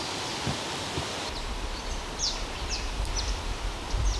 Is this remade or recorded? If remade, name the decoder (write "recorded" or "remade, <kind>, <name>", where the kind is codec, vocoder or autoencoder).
remade, vocoder, BigVGAN v2